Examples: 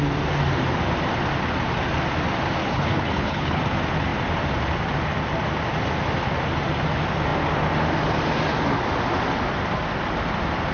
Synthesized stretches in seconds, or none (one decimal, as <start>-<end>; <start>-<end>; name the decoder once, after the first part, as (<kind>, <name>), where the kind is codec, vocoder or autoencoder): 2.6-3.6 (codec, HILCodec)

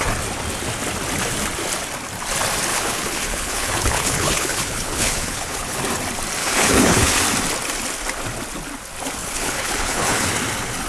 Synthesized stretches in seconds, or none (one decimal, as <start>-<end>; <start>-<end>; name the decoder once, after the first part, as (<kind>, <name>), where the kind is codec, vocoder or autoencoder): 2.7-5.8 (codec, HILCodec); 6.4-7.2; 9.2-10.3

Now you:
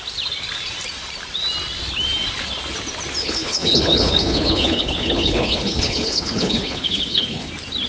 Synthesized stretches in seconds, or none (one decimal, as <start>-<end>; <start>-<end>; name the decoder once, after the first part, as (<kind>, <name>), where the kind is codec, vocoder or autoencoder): 3.2-7.5 (codec, HILCodec)

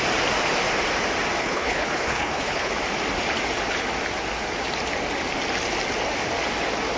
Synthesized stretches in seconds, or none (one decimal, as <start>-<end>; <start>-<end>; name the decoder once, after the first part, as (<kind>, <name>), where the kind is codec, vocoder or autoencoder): 1.4-2.7 (codec, HILCodec)

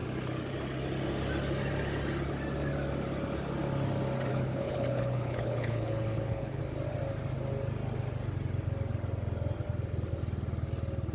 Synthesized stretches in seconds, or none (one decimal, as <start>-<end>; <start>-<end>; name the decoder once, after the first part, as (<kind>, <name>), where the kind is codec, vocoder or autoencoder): 4.3-6.6 (codec, HILCodec)

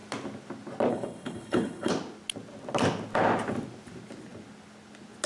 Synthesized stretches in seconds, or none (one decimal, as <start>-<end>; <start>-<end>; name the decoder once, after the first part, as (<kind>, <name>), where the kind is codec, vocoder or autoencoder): 0.9-1.9 (codec, HILCodec)

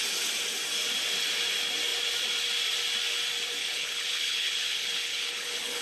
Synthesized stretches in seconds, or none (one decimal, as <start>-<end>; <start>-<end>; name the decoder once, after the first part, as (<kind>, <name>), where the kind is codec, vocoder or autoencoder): 3.6-5.8 (codec, HILCodec)

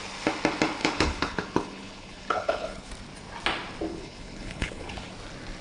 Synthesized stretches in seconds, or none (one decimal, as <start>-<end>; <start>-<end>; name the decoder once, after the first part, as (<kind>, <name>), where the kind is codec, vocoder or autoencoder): 0.8-2.9 (codec, HILCodec); 3.9-5.1